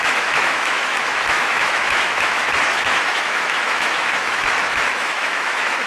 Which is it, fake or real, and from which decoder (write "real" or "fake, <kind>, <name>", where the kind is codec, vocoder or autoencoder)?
fake, autoencoder, DAC-VAE